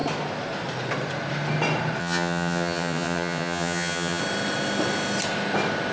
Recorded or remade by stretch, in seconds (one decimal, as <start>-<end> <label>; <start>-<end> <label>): 0.0-2.0 recorded; 2.0-4.2 remade; 4.2-5.9 recorded